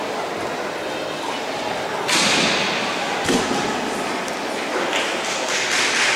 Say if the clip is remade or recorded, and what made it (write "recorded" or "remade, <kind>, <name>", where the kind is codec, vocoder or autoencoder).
recorded